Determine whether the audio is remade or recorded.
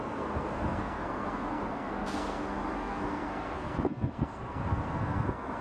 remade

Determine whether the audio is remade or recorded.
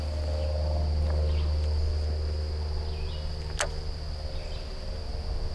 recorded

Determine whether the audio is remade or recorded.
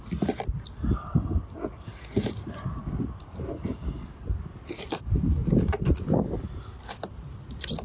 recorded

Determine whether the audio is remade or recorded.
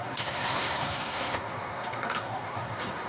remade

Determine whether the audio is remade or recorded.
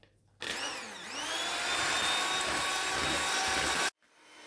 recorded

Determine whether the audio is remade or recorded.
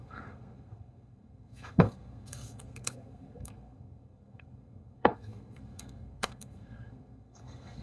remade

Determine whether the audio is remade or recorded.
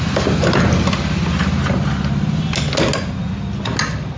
recorded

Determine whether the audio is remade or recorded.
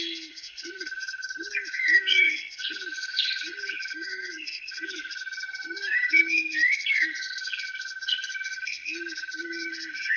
remade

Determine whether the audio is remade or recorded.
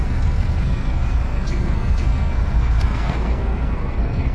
remade